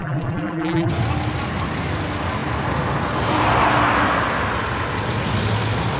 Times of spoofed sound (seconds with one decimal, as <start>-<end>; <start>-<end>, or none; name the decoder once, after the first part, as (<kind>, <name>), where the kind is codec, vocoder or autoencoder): 0.0-0.9 (vocoder, BigVGAN v2)